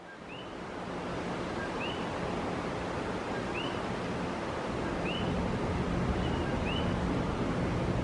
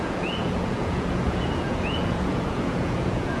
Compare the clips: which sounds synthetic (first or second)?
second